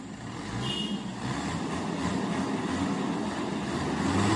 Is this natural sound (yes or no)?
yes